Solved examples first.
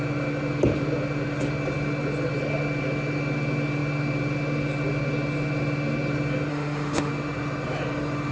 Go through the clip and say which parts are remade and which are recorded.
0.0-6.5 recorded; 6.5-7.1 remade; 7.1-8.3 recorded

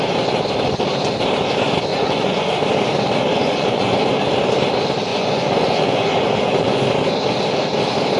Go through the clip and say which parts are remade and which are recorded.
0.0-1.9 recorded; 1.9-2.5 remade; 2.5-3.3 recorded; 3.3-4.0 remade; 4.0-5.1 recorded; 5.1-6.8 remade; 6.8-8.2 recorded